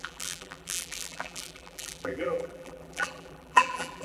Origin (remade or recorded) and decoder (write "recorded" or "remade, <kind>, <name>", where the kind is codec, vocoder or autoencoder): remade, vocoder, BigVGAN v2